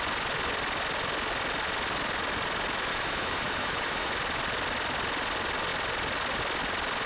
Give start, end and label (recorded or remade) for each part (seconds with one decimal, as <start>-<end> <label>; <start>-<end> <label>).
0.0-2.9 recorded; 2.9-4.1 remade; 4.1-7.1 recorded